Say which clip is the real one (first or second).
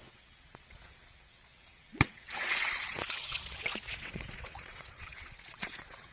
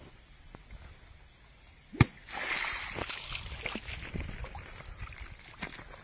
second